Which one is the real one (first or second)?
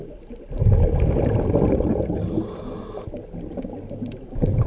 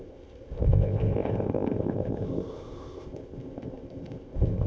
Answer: first